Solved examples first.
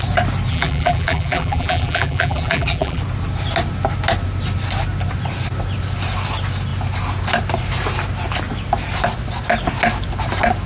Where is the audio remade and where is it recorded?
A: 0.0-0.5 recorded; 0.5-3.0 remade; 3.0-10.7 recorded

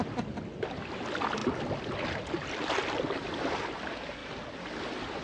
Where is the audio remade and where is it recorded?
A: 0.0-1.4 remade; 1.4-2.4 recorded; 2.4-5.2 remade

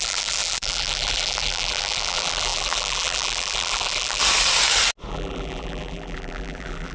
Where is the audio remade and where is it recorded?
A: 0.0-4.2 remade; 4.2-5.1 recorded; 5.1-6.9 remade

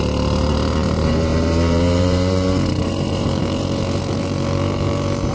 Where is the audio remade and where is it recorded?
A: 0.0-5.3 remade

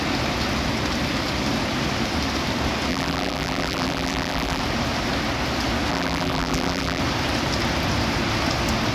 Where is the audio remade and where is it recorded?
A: 0.0-2.9 recorded; 2.9-4.6 remade; 4.6-5.9 recorded; 5.9-7.0 remade; 7.0-8.9 recorded